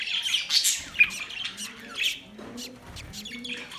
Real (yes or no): yes